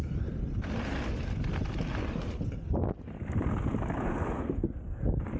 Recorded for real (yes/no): yes